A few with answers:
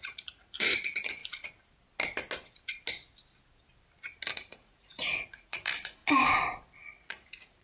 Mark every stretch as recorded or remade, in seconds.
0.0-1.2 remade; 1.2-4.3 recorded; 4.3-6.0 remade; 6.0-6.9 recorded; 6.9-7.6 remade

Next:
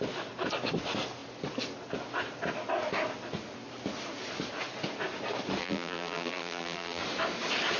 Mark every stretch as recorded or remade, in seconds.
0.0-5.6 recorded; 5.6-7.0 remade; 7.0-7.8 recorded

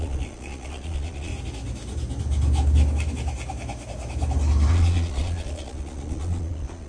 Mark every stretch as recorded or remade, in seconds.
0.0-1.3 remade; 1.3-4.7 recorded; 4.7-6.9 remade

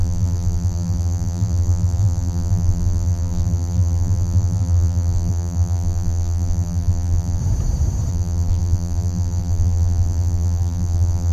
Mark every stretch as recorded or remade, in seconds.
0.0-7.4 remade; 7.4-8.1 recorded; 8.1-11.3 remade

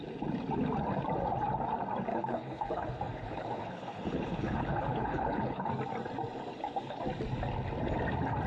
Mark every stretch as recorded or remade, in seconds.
0.0-2.1 recorded; 2.1-5.7 remade; 5.7-6.5 recorded; 6.5-7.0 remade; 7.0-8.5 recorded